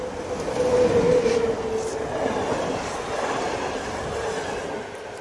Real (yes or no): yes